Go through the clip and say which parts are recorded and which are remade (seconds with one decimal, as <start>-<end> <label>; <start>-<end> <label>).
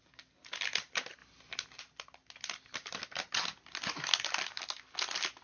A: 0.0-5.4 recorded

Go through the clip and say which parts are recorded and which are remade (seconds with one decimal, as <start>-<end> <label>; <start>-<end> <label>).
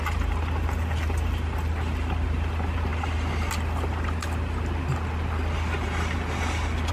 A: 0.0-6.9 recorded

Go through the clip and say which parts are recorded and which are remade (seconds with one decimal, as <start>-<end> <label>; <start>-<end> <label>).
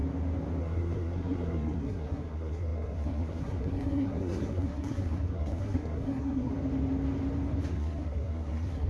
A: 0.0-0.6 recorded; 0.6-6.5 remade; 6.5-7.7 recorded; 7.7-8.9 remade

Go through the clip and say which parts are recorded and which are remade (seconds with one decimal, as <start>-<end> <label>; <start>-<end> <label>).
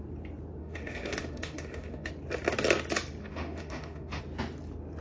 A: 0.0-0.6 recorded; 0.6-2.1 remade; 2.1-3.2 recorded; 3.2-4.2 remade; 4.2-5.0 recorded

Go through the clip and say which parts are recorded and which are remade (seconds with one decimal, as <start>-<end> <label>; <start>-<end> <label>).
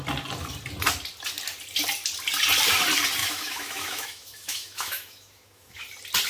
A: 0.0-3.2 recorded; 3.2-5.8 remade; 5.8-6.3 recorded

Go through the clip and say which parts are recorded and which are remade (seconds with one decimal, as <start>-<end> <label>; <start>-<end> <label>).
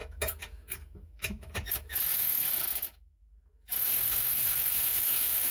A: 0.0-5.5 remade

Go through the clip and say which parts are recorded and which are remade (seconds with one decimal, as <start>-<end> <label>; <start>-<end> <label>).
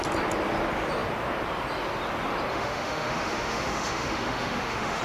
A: 0.0-2.5 recorded; 2.5-5.0 remade